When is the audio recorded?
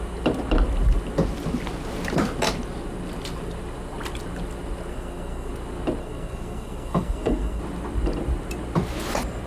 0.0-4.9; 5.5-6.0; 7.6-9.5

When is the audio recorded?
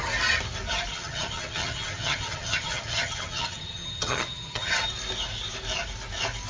0.0-0.9; 4.7-6.5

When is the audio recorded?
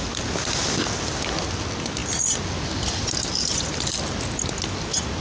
0.0-5.2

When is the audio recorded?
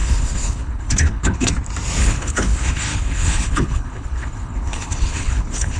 1.5-2.0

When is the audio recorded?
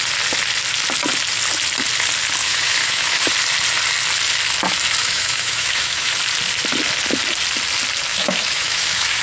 0.0-2.4; 3.3-5.0; 6.1-8.1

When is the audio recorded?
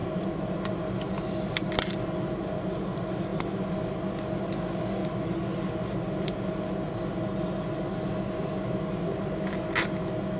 0.0-10.4